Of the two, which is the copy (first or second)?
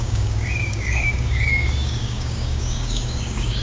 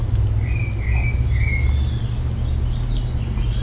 first